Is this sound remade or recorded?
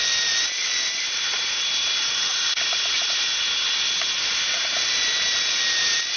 recorded